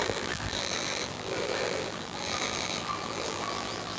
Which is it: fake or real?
fake